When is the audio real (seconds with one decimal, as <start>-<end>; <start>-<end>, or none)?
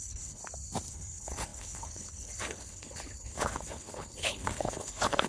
0.4-0.9